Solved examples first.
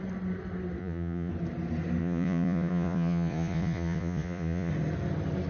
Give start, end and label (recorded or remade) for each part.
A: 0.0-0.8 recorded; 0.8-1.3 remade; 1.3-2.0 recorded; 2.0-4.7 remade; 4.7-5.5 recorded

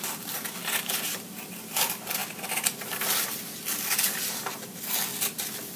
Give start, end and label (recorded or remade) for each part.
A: 0.0-5.8 recorded

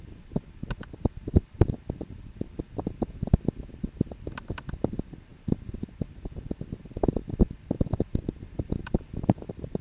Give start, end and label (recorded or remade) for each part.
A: 0.0-9.8 recorded